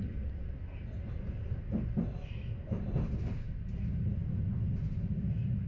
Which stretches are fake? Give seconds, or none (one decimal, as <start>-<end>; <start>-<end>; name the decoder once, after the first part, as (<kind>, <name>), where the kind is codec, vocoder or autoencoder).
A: 2.1-2.8 (autoencoder, DAC-VAE)